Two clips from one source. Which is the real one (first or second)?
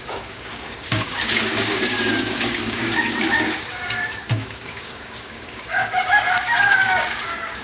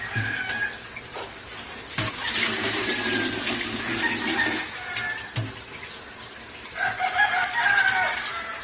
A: second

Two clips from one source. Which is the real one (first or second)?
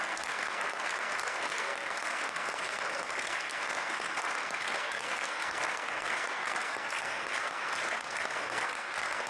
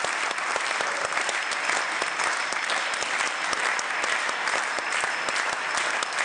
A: second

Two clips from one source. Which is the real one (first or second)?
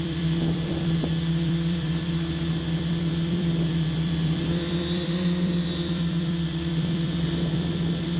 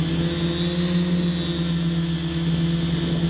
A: second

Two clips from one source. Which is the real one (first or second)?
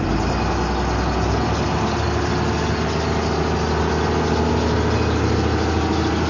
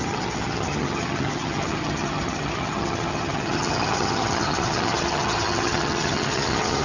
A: first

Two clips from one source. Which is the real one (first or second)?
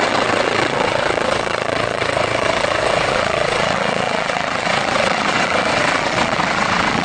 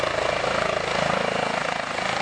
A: second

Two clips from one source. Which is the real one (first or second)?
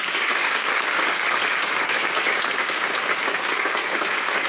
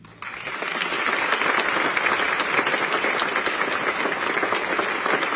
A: second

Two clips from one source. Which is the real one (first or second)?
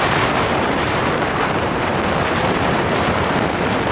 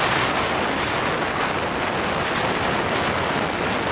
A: second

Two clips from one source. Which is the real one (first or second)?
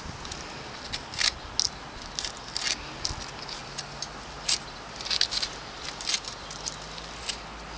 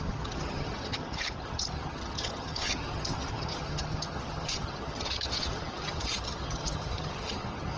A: first